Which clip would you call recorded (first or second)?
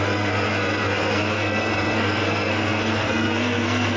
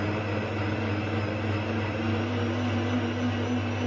second